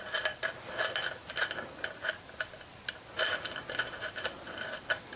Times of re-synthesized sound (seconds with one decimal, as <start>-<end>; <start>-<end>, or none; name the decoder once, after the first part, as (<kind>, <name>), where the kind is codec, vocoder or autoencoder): none